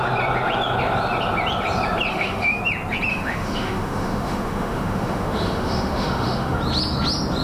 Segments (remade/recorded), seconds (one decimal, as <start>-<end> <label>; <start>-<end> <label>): 0.0-2.1 recorded; 2.1-2.6 remade; 2.6-3.1 recorded; 3.1-6.6 remade; 6.6-7.4 recorded